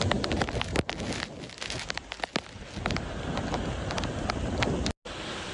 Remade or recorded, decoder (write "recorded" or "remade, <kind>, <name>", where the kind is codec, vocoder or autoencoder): recorded